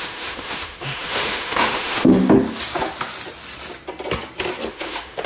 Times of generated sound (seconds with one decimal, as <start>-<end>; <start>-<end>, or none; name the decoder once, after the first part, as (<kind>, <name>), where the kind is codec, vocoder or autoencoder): 0.0-2.2 (autoencoder, DAC-VAE); 4.7-5.3